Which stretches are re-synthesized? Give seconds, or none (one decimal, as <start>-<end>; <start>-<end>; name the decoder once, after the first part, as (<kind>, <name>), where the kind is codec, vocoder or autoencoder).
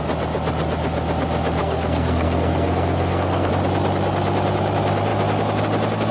1.6-3.5 (codec, SNAC)